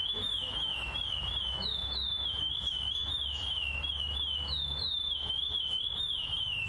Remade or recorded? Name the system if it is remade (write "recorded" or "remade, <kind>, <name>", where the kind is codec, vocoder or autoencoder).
remade, autoencoder, DAC-VAE